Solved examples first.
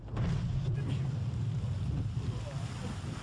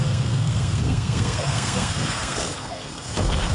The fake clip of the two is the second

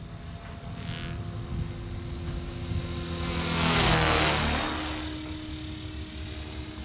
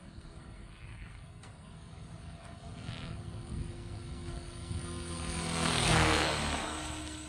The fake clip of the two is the second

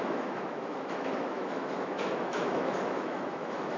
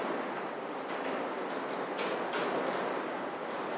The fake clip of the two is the first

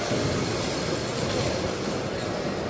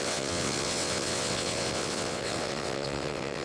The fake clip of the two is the second